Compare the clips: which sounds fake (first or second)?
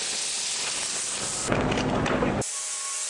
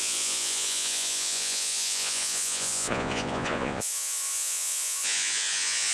second